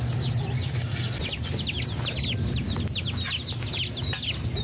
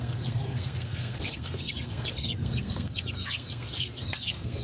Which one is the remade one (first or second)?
second